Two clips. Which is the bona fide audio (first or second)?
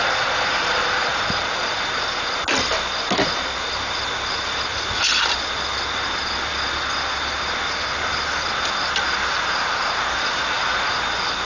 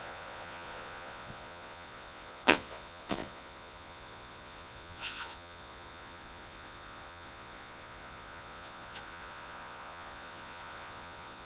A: first